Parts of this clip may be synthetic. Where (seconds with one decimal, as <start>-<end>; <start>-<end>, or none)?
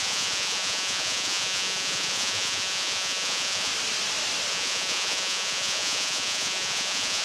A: 0.0-3.7; 4.5-7.2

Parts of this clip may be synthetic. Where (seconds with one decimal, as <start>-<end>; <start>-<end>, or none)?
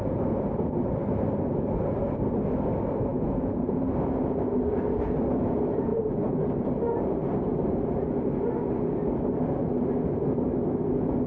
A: 3.1-3.8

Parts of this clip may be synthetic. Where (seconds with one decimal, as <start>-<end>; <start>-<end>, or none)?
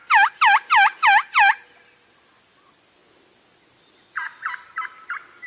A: none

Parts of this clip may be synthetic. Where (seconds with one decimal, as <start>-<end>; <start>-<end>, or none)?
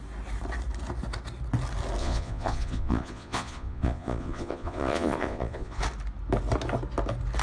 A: 2.0-5.8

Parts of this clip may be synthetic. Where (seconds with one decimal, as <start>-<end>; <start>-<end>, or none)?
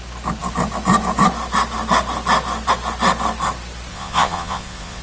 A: 3.9-5.0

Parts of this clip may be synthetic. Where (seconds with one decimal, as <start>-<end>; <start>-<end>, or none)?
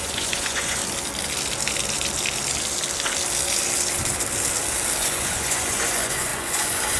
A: 0.0-0.8; 5.0-7.0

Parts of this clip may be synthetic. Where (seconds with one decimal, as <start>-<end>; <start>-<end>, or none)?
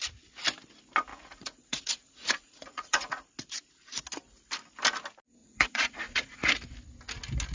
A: 1.1-3.2; 5.4-6.5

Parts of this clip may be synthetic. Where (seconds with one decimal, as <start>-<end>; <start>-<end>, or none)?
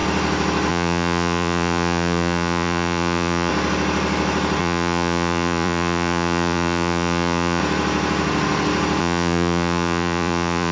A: 0.7-3.5; 4.6-7.6; 9.0-10.7